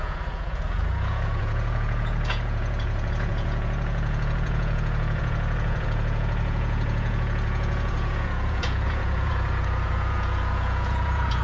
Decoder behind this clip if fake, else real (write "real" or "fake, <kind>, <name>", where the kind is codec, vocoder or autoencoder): fake, vocoder, Vocos